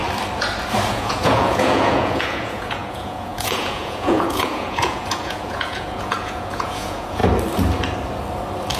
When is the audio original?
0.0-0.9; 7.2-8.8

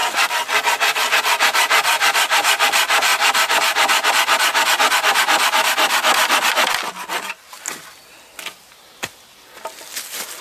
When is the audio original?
0.0-10.4

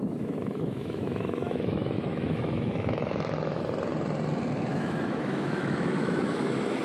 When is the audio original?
3.6-4.7

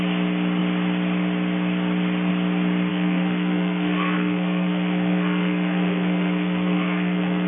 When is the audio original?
0.0-2.9

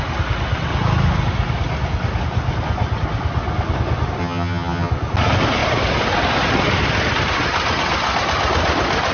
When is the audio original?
0.0-4.2; 4.9-9.1

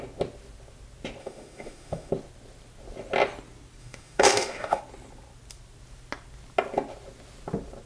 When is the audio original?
0.0-1.2; 2.1-3.8; 4.8-7.9

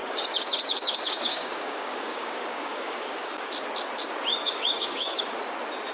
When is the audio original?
3.5-4.3; 5.2-5.9